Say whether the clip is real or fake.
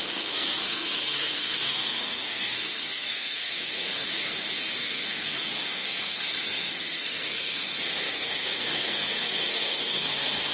fake